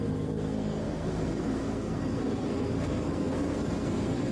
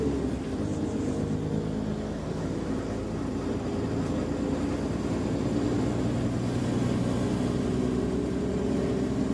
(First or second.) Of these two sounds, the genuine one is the second